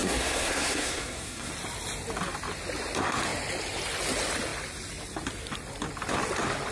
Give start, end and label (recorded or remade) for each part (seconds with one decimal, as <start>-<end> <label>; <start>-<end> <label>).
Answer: 0.0-1.5 remade; 1.5-6.7 recorded